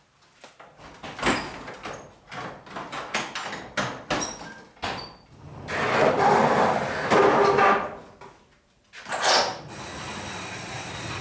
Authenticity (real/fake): real